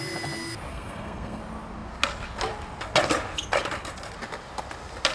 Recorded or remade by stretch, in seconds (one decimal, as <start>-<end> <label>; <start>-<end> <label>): 0.0-0.7 recorded; 0.7-1.4 remade; 1.4-5.1 recorded